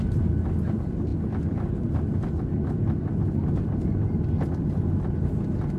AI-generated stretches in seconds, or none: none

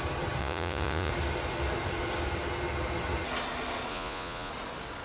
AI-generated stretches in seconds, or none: 0.4-1.1 (vocoder, Vocos); 3.9-4.5

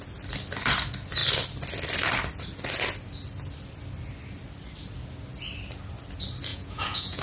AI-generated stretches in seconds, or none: 6.5-7.2 (vocoder, Vocos)